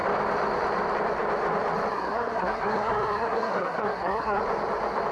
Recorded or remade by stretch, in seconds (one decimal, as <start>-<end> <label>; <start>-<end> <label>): 0.0-1.9 recorded; 1.9-4.4 remade; 4.4-5.1 recorded